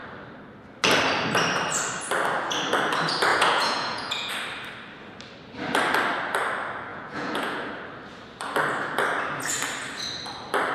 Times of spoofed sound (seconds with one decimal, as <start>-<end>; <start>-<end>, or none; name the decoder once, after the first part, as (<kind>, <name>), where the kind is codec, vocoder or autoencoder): 3.3-4.3 (vocoder, Vocos); 6.9-7.7